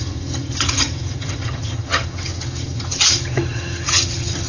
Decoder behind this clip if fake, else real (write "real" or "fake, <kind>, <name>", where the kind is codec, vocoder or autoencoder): fake, vocoder, HiFi-GAN